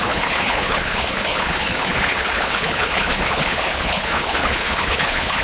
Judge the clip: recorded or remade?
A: remade